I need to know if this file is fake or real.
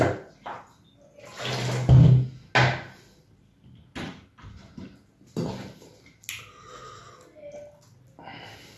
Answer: real